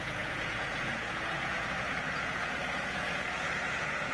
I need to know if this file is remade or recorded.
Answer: remade